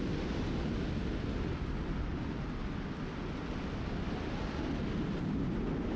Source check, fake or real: real